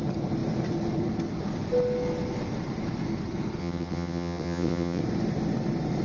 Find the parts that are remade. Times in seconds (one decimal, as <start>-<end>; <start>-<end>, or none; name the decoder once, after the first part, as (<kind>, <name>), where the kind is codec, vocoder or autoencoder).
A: 3.6-5.0 (vocoder, WaveNeXt)